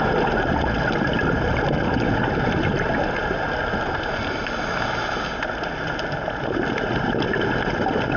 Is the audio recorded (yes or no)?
yes